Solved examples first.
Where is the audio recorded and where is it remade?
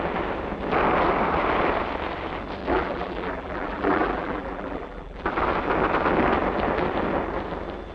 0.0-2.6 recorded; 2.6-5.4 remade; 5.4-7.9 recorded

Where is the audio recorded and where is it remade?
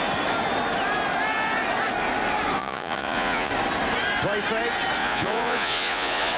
0.0-2.6 recorded; 2.6-3.5 remade; 3.5-5.0 recorded; 5.0-6.4 remade